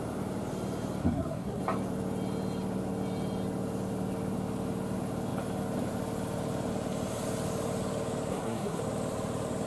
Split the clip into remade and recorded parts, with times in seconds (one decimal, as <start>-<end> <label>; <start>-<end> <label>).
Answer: 0.0-1.0 recorded; 1.0-1.6 remade; 1.6-8.3 recorded; 8.3-8.8 remade; 8.8-9.7 recorded